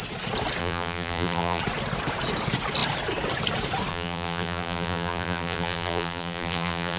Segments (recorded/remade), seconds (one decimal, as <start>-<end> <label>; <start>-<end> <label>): 0.0-0.6 recorded; 0.6-1.6 remade; 1.6-3.9 recorded; 3.9-7.0 remade